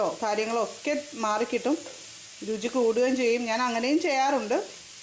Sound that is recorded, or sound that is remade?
recorded